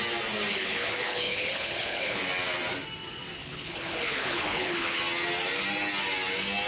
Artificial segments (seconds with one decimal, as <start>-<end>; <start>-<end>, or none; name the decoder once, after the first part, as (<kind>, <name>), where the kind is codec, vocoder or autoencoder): 0.5-2.2 (codec, HILCodec); 3.4-5.0